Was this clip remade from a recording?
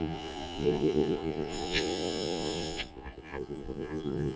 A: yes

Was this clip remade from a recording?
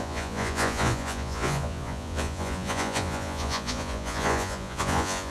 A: yes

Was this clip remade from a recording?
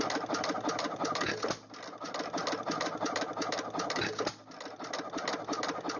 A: no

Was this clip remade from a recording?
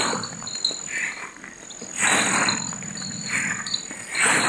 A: no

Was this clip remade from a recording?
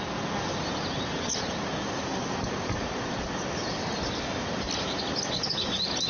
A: no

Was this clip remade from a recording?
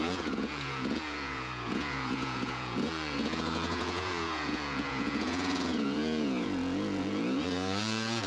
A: yes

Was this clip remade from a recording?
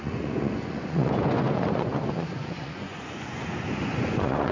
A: yes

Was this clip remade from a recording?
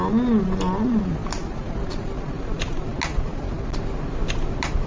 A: no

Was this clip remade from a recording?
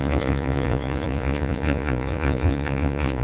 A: yes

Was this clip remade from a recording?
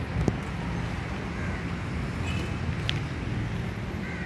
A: no